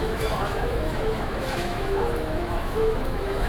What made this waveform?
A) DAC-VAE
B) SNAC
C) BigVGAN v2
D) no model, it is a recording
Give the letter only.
A